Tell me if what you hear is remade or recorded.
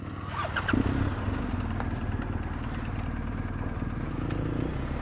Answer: recorded